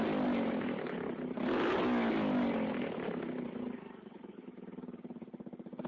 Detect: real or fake real